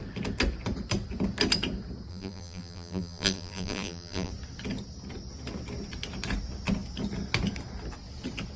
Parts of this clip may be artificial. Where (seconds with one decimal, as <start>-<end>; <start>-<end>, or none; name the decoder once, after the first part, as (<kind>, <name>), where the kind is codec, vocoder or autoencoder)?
2.1-4.3 (vocoder, BigVGAN v2)